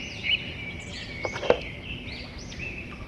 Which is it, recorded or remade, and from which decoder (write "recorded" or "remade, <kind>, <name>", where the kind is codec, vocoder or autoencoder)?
remade, vocoder, BigVGAN v2